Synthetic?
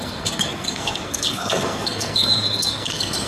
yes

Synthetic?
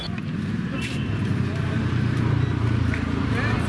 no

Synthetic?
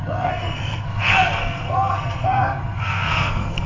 yes